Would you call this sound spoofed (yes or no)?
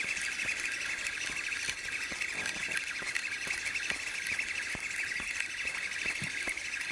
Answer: no